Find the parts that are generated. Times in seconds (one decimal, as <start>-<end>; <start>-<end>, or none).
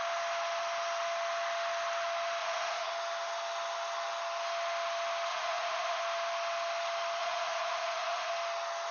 2.4-2.9; 5.3-6.0; 7.2-8.3